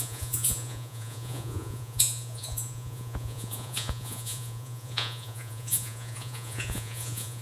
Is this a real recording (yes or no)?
no